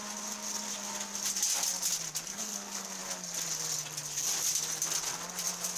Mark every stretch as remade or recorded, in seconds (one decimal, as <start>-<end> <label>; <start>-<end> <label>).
0.0-2.3 recorded; 2.3-3.0 remade; 3.0-5.8 recorded